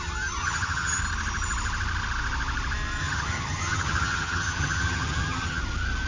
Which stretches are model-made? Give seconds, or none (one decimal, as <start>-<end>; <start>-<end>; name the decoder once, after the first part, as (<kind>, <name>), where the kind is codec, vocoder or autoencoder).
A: 0.4-1.0 (vocoder, HiFi-GAN); 3.0-5.6

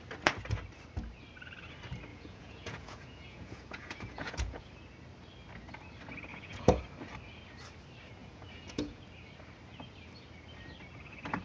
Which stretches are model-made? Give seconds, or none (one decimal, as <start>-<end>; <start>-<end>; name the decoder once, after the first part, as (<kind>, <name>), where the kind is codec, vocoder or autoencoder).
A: 2.1-4.6 (vocoder, Vocos); 6.3-6.8; 8.2-9.0

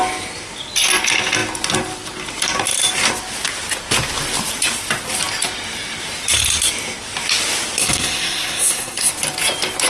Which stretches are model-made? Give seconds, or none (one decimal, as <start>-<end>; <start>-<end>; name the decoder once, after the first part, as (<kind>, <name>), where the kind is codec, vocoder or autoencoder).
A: 7.8-9.1 (codec, SNAC)